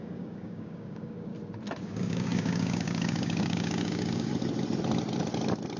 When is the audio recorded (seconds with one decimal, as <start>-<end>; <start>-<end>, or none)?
1.3-1.8; 4.3-5.8